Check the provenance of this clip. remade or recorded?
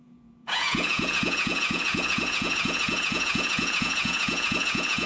remade